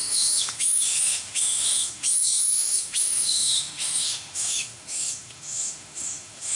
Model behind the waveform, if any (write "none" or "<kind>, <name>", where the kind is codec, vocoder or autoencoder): autoencoder, DAC-VAE